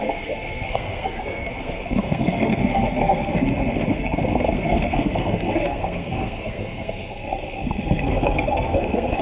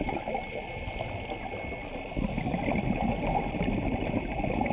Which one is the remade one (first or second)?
first